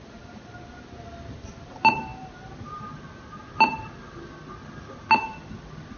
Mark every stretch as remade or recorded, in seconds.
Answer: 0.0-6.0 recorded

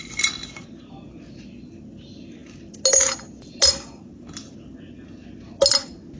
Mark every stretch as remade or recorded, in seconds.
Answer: 0.0-6.2 recorded

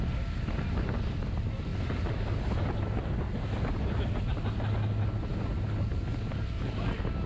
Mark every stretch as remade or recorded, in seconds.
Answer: 0.0-7.3 recorded

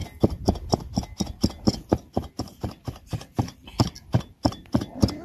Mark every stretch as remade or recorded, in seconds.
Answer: 0.0-2.3 recorded; 2.3-3.7 remade; 3.7-4.2 recorded; 4.2-5.2 remade

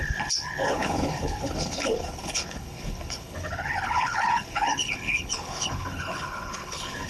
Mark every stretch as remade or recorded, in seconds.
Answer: 0.0-7.1 remade